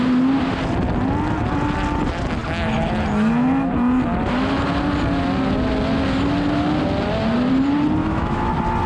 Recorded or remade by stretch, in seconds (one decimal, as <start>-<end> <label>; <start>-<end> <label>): 0.0-8.0 recorded; 8.0-8.5 remade; 8.5-8.9 recorded